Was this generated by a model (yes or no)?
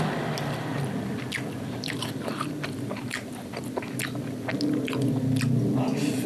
no